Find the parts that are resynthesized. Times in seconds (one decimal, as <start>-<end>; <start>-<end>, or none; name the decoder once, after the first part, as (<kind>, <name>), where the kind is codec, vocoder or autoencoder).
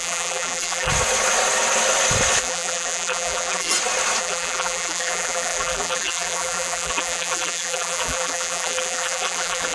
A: 0.0-0.9 (vocoder, BigVGAN v2); 2.4-3.7; 4.2-9.7